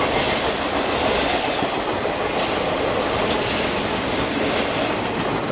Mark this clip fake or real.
real